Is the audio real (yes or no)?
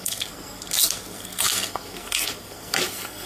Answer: no